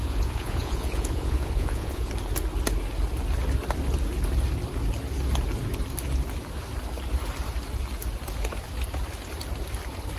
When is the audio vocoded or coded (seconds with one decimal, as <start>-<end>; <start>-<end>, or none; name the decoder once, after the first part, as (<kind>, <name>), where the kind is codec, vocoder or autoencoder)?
0.0-2.1 (vocoder, Vocos)